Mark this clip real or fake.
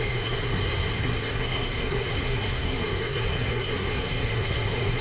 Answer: fake